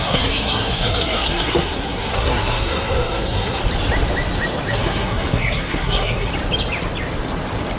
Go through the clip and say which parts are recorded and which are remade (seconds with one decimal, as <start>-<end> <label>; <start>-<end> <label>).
0.0-3.6 remade; 3.6-4.7 recorded; 4.7-6.3 remade; 6.3-7.8 recorded